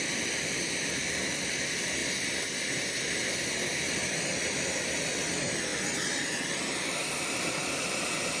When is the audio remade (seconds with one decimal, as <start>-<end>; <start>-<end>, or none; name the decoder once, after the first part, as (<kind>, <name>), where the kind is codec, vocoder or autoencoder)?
none